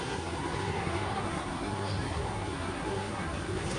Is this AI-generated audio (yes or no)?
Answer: yes